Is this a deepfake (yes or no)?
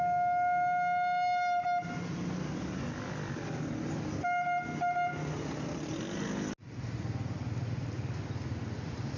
no